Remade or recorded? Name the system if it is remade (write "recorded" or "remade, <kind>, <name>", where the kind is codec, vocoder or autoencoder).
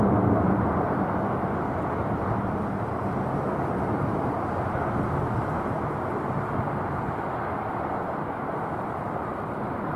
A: recorded